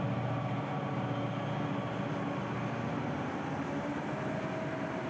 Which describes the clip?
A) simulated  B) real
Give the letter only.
B